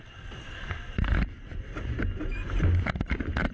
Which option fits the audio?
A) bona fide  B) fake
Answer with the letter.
A